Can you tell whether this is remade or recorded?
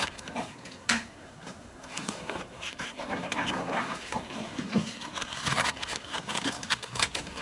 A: remade